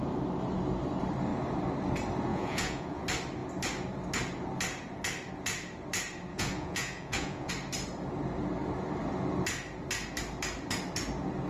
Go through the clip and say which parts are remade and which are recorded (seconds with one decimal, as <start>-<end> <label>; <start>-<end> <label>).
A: 0.0-2.3 recorded; 2.3-3.0 remade; 3.0-6.3 recorded; 6.3-7.5 remade; 7.5-11.5 recorded